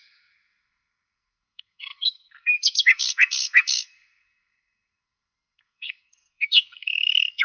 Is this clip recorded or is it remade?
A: remade